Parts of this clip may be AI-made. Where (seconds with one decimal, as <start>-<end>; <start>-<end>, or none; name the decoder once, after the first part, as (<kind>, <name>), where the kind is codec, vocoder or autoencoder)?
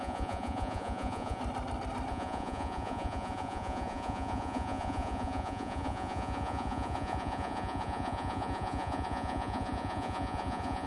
0.0-1.4 (vocoder, Vocos); 2.1-10.9